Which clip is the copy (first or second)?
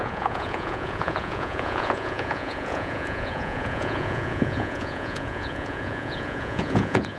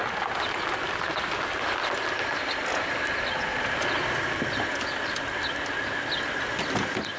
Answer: first